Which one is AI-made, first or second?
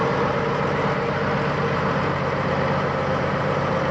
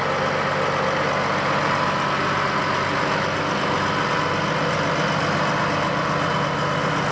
first